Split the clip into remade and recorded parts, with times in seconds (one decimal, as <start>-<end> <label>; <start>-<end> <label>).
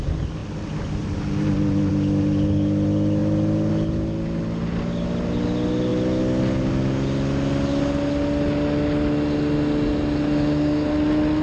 0.0-11.4 recorded